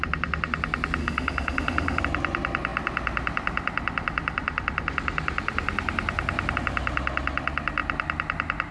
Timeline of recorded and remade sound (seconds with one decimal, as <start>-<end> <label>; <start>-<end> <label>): 0.0-1.0 recorded; 1.0-2.0 remade; 2.0-8.7 recorded